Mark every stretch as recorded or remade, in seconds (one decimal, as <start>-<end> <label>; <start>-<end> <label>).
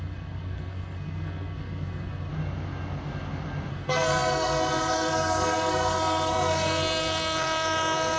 0.0-2.3 remade; 2.3-3.7 recorded; 3.7-8.2 remade